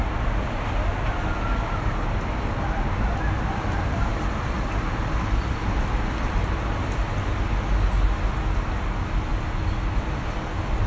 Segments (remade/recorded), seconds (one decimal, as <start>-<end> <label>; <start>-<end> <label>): 0.0-1.1 remade; 1.1-4.1 recorded; 4.1-7.4 remade; 7.4-10.9 recorded